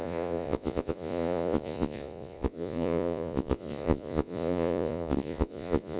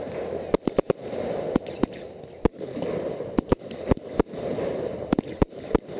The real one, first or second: second